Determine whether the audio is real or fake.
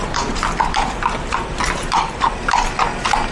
real